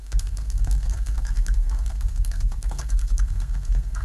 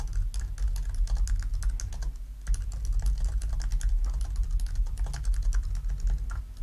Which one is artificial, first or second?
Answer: first